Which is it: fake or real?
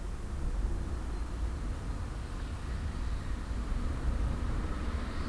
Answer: real